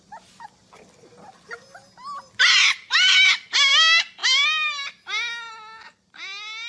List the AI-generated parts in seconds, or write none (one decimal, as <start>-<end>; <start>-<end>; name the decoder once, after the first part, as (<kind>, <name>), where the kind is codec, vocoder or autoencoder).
none